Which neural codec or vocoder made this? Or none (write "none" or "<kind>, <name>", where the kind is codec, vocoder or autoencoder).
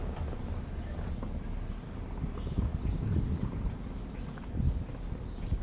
none